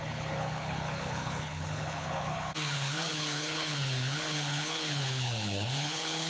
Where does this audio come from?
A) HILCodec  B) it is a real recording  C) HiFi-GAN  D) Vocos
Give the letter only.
A